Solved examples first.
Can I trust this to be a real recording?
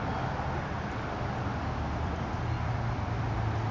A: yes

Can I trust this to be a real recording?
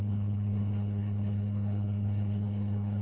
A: no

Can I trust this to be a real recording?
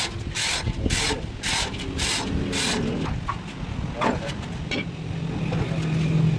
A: yes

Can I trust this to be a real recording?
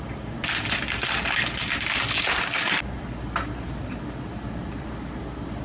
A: yes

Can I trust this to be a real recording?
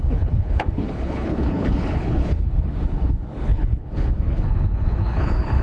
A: no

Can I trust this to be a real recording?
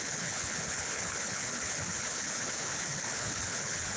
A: no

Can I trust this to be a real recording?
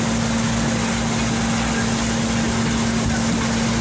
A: yes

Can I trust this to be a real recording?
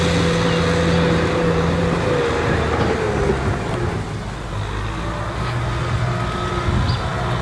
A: yes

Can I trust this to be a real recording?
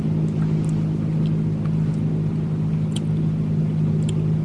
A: yes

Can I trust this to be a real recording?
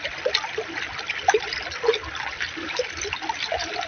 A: yes